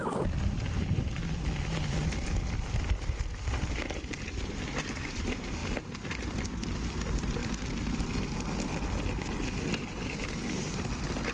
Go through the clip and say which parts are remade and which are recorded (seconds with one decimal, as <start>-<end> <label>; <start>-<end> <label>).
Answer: 0.0-11.3 recorded